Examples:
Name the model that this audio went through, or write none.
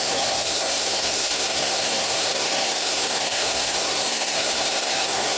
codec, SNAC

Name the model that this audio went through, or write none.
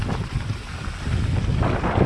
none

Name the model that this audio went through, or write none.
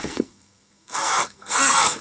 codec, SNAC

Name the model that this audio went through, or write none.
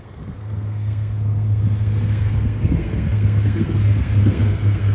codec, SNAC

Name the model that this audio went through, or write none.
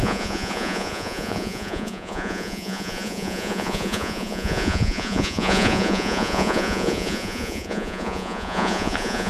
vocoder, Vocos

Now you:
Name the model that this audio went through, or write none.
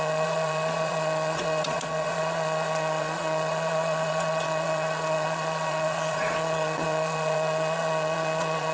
vocoder, Vocos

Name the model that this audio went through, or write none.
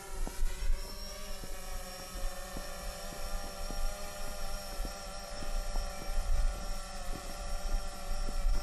none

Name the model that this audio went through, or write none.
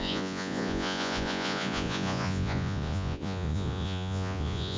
vocoder, Vocos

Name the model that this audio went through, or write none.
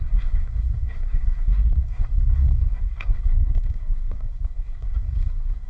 codec, SNAC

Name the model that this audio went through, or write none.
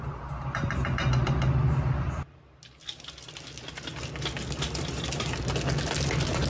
none